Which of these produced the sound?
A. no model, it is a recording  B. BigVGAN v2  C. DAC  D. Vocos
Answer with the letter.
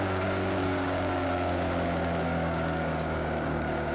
C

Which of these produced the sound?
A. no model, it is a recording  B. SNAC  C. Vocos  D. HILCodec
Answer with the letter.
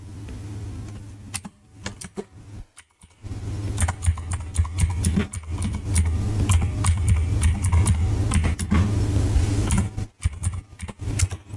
A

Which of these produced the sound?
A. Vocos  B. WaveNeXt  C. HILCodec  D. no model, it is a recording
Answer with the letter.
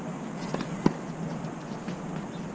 D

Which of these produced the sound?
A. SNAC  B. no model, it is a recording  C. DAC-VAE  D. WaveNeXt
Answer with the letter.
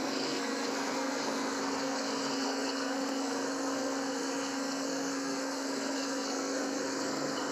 A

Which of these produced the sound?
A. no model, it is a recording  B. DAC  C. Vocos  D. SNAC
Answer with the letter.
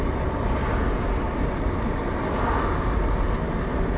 A